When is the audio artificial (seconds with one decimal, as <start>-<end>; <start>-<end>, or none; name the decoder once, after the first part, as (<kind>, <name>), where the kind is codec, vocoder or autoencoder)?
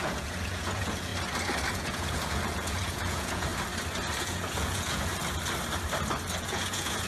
0.0-1.1 (vocoder, Vocos); 1.7-3.5; 4.2-5.1; 6.3-7.1